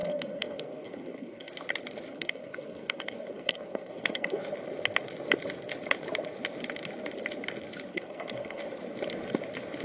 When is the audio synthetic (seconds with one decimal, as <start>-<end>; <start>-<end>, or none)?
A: 0.0-1.5; 2.1-4.4; 7.9-8.6